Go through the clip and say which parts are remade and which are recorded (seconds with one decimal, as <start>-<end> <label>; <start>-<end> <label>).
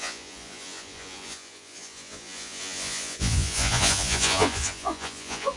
0.0-5.6 remade